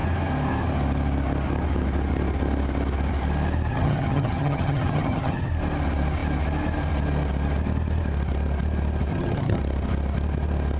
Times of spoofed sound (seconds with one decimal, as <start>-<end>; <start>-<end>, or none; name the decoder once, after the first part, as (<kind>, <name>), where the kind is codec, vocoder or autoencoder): 3.7-5.5 (vocoder, HiFi-GAN); 9.1-9.6